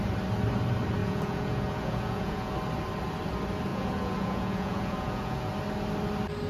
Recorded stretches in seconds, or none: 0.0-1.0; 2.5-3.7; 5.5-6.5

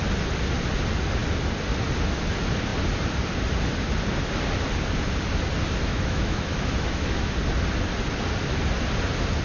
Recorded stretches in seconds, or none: 0.0-5.9; 7.3-9.4

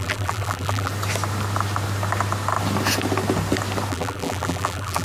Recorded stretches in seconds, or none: 0.9-3.9

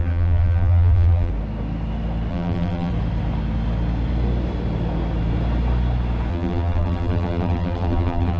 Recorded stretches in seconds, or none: 1.3-2.3; 2.9-6.3

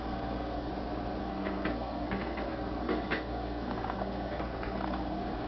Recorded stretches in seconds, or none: 0.7-1.2

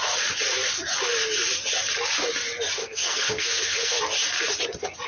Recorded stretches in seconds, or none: 0.0-2.8; 4.0-5.1

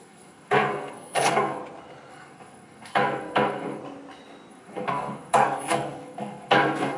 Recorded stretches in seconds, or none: 1.6-2.1; 3.8-4.5

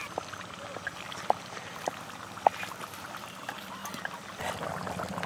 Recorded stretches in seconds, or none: 3.8-4.4